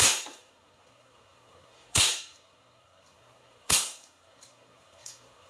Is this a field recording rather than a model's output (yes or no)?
no